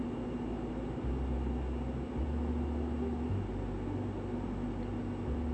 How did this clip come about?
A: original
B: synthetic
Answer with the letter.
A